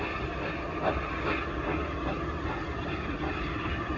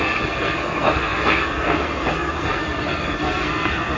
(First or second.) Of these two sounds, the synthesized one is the second